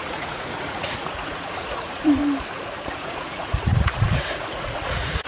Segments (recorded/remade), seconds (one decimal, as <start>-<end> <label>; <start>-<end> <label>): 0.0-2.2 remade; 2.2-2.9 recorded; 2.9-5.3 remade